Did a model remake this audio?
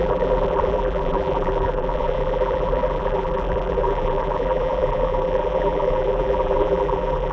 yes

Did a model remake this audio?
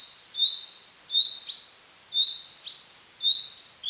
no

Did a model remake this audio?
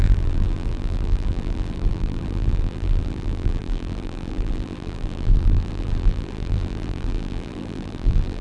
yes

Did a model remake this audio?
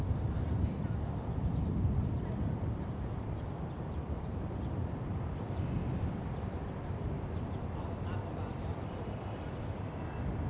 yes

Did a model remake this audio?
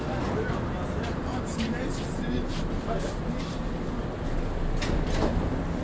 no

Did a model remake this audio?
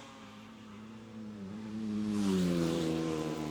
yes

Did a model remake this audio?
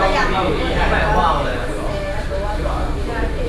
yes